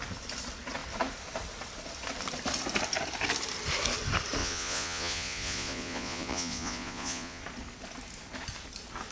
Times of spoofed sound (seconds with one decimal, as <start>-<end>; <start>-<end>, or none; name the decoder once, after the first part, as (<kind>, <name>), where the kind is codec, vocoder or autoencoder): 4.4-7.4 (vocoder, Vocos)